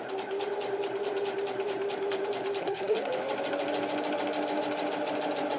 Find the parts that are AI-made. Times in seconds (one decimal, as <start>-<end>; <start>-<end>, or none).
2.6-3.1